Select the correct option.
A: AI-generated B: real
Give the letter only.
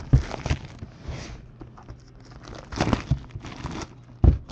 B